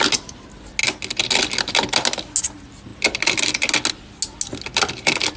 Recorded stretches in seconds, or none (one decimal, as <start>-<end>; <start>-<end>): 0.0-5.4

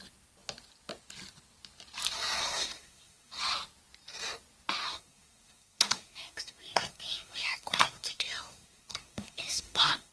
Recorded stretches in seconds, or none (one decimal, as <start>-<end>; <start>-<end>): 0.0-2.4; 3.4-4.8

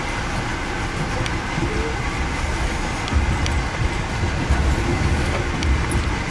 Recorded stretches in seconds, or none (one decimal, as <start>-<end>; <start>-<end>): 0.0-4.9; 5.5-6.3

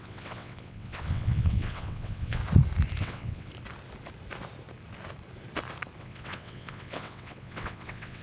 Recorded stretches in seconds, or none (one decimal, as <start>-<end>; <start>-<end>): 2.4-3.0; 3.5-6.0

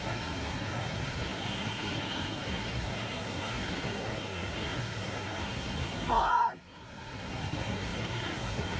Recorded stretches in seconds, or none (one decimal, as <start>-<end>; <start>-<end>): none

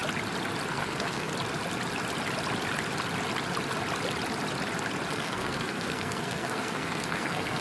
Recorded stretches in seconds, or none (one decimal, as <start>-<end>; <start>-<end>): 0.0-0.7; 1.3-5.1

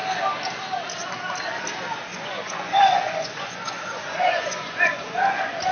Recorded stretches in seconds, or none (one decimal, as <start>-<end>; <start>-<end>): 0.0-2.1